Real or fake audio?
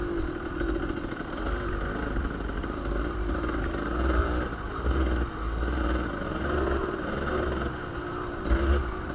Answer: real